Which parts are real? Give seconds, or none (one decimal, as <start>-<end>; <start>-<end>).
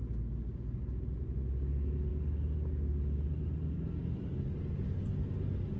0.0-5.8